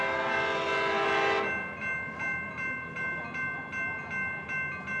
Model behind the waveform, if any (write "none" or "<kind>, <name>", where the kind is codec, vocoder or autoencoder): none